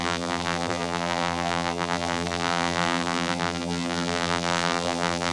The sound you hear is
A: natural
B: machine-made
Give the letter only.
B